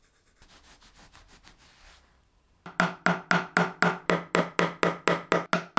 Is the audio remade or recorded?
recorded